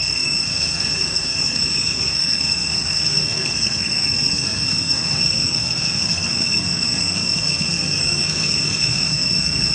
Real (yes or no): no